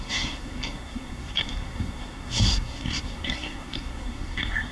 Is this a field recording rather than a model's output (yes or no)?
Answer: no